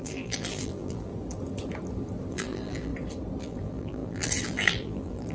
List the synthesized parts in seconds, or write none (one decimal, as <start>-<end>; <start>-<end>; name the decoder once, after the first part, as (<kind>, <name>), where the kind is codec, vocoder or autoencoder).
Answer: 0.0-1.1 (vocoder, BigVGAN v2); 2.3-2.9; 3.4-5.3